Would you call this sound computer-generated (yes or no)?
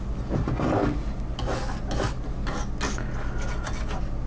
no